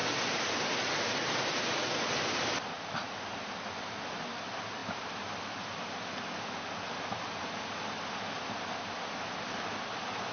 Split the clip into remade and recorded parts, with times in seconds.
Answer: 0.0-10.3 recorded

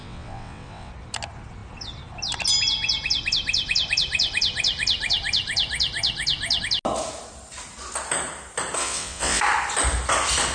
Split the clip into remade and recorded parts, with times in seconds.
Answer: 0.0-0.9 remade; 0.9-8.8 recorded; 8.8-9.4 remade; 9.4-10.5 recorded

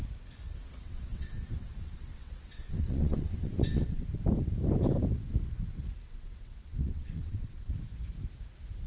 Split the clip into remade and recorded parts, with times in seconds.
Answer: 0.0-0.8 recorded; 0.8-4.0 remade; 4.0-6.1 recorded; 6.1-7.7 remade; 7.7-8.9 recorded